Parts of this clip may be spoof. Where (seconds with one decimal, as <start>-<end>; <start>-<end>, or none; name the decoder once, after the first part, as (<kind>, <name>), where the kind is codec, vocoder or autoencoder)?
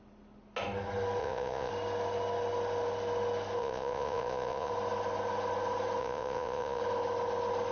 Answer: 1.2-1.7 (vocoder, Vocos); 3.6-4.7; 6.0-6.8